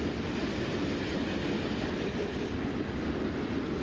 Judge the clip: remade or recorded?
recorded